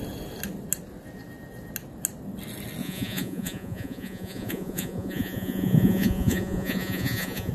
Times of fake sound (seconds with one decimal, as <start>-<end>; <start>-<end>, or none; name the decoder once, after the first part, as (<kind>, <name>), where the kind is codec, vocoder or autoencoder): 2.8-7.5 (vocoder, Vocos)